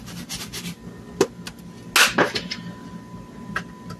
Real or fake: real